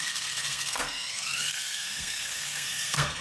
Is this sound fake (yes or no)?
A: yes